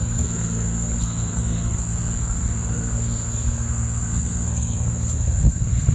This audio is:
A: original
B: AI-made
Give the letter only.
B